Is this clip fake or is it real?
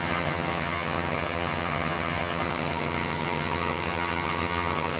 fake